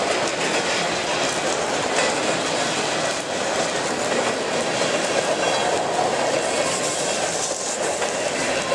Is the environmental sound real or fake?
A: real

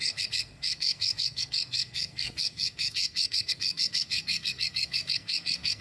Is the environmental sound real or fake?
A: fake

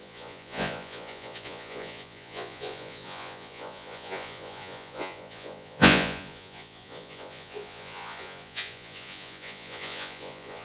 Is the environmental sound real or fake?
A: fake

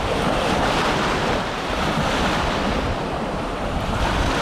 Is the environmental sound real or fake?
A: real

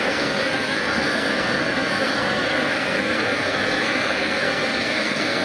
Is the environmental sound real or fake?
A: fake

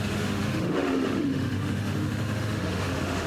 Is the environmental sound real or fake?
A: fake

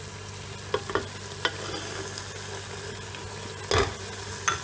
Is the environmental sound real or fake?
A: real